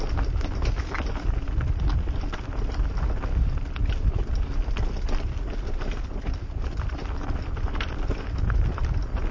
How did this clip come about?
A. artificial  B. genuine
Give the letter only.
B